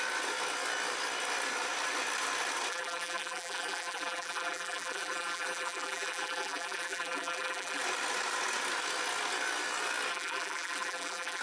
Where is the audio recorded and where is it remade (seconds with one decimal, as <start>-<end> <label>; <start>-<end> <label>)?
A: 0.0-2.7 recorded; 2.7-7.8 remade; 7.8-10.1 recorded; 10.1-11.4 remade